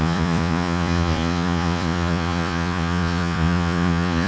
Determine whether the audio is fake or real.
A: fake